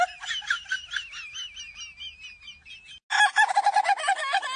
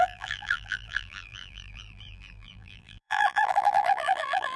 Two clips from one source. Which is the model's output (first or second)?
second